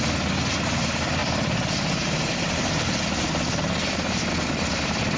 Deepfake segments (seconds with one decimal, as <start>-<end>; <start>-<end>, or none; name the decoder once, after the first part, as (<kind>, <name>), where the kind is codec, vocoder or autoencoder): none